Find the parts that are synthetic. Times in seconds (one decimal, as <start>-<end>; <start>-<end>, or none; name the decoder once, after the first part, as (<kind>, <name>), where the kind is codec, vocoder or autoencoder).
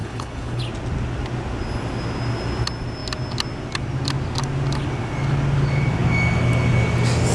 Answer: 0.0-0.6 (codec, HILCodec)